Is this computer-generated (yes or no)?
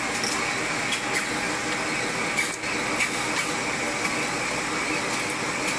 no